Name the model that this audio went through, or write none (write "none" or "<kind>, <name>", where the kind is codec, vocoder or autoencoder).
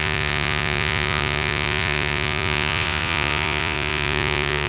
vocoder, Vocos